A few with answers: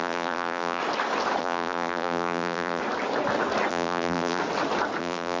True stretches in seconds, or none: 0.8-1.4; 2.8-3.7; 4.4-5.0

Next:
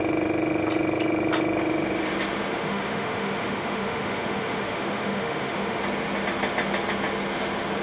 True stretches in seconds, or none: 0.0-2.5; 5.8-7.8

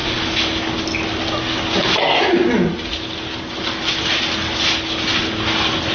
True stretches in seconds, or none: 0.0-5.9

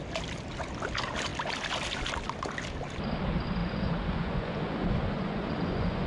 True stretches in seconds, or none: 0.0-3.6

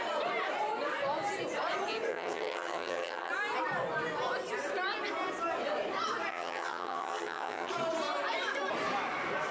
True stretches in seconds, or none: 0.0-2.1; 3.3-6.3; 7.7-9.5

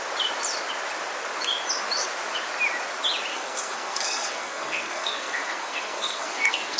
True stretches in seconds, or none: 0.0-3.3

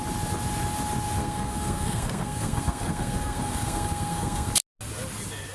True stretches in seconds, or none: 0.0-1.2; 4.5-5.5

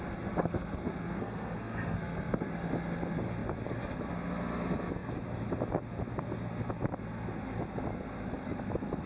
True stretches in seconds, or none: 0.0-0.4; 2.5-9.1